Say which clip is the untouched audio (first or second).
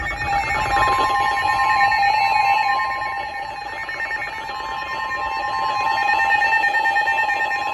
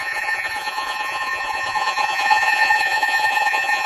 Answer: first